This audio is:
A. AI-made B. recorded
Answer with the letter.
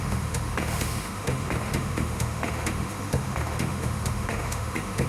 A